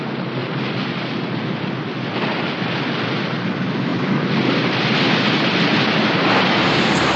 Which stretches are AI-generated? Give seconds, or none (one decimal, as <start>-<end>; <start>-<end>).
none